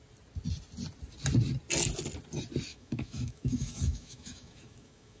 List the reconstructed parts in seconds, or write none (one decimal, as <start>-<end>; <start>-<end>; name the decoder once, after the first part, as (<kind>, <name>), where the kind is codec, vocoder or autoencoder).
2.7-5.2 (autoencoder, DAC-VAE)